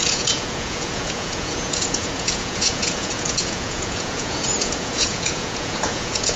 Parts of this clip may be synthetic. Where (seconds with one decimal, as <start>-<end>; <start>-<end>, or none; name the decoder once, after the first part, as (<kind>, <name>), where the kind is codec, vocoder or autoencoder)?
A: 0.0-6.4 (vocoder, Vocos)